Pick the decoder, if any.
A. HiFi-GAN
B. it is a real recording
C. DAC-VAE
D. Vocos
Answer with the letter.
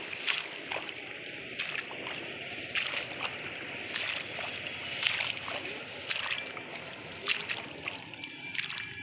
B